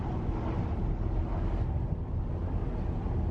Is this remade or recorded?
recorded